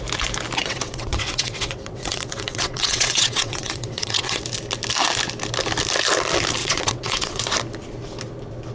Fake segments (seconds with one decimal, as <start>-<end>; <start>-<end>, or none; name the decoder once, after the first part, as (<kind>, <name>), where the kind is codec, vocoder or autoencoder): 0.6-4.4 (vocoder, WaveNeXt); 6.6-7.4